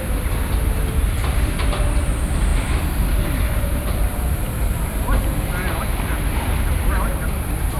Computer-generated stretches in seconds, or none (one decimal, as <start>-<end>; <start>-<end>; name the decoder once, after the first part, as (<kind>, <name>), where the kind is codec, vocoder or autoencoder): 2.5-7.1 (vocoder, BigVGAN v2)